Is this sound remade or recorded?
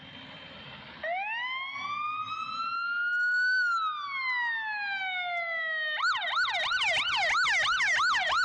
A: recorded